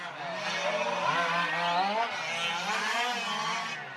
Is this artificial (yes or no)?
no